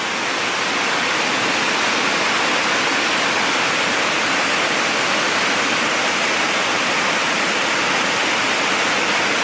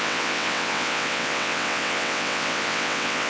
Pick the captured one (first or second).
first